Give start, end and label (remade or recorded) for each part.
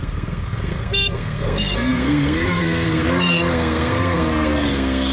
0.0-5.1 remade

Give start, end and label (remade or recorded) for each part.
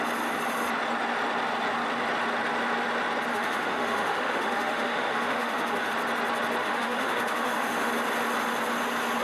0.0-3.3 recorded; 3.3-5.9 remade; 5.9-6.6 recorded; 6.6-7.9 remade; 7.9-9.2 recorded